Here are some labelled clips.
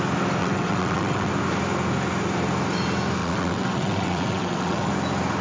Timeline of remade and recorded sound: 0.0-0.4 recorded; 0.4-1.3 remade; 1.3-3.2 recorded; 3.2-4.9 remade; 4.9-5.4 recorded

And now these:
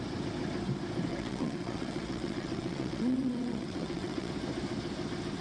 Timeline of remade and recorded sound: 0.0-1.1 recorded; 1.1-4.3 remade; 4.3-5.4 recorded

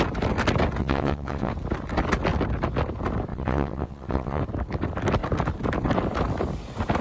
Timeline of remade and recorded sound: 0.0-0.8 recorded; 0.8-1.5 remade; 1.5-3.3 recorded; 3.3-4.4 remade; 4.4-7.0 recorded

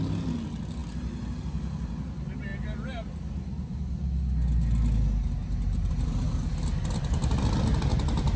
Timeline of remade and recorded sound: 0.0-8.4 recorded

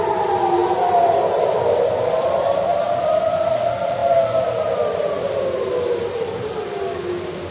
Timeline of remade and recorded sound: 0.0-7.5 recorded

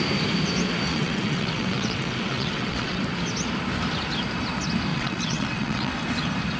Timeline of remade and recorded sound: 0.0-0.9 recorded; 0.9-3.0 remade; 3.0-4.9 recorded; 4.9-5.9 remade; 5.9-6.6 recorded